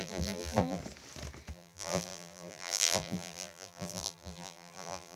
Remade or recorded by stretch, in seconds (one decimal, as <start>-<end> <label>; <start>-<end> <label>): 0.0-0.8 remade; 0.8-1.5 recorded; 1.5-5.2 remade